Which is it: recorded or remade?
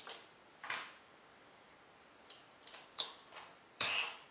recorded